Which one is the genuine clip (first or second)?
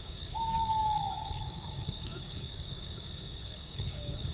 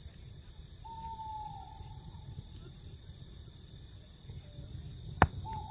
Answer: second